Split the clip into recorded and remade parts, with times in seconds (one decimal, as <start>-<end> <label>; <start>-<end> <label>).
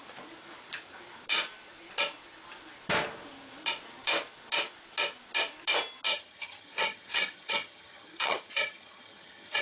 0.0-6.1 recorded; 6.1-9.6 remade